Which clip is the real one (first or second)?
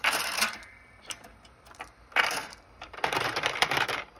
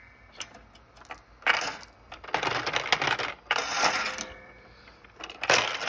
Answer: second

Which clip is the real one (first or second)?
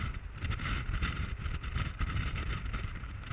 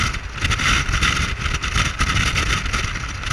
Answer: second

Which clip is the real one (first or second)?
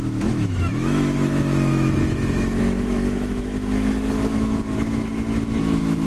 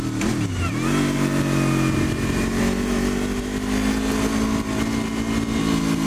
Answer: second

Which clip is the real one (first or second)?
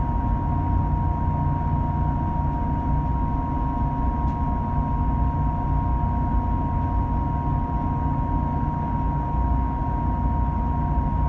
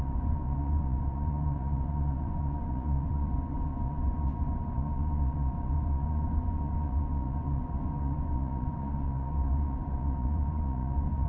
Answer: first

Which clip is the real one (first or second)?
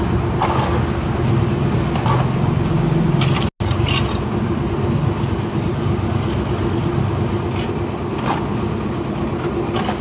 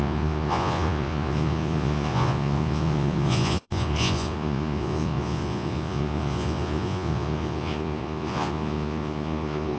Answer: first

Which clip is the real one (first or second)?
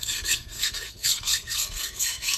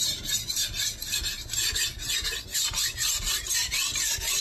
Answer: second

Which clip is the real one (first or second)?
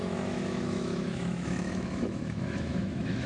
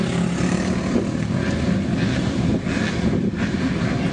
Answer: second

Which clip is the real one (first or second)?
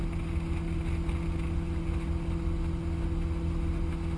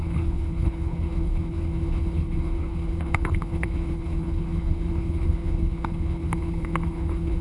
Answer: first